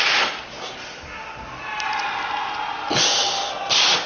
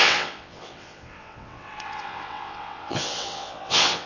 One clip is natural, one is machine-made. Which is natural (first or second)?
first